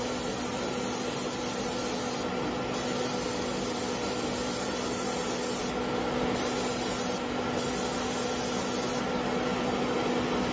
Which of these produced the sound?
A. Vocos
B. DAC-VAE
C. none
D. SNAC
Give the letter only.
C